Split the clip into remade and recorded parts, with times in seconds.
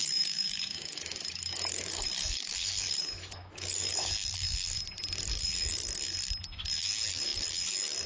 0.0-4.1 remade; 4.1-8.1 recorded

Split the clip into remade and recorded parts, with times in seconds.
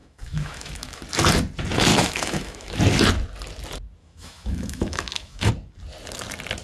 0.0-1.0 remade; 1.0-1.9 recorded; 1.9-2.8 remade; 2.8-4.0 recorded; 4.0-5.5 remade; 5.5-6.6 recorded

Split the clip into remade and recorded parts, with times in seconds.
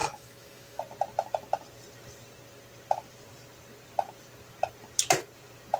0.0-0.8 remade; 0.8-5.8 recorded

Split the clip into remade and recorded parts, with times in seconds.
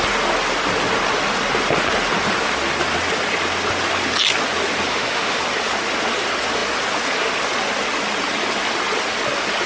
0.0-4.9 recorded; 4.9-5.4 remade; 5.4-9.7 recorded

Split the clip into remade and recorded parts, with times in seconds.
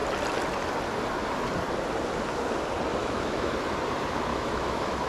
0.0-3.0 recorded; 3.0-3.5 remade; 3.5-4.3 recorded; 4.3-5.1 remade